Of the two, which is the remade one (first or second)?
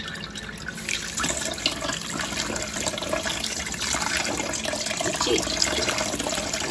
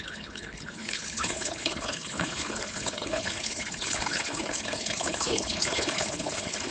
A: second